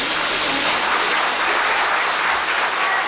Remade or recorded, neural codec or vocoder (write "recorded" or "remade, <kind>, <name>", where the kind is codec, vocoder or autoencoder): recorded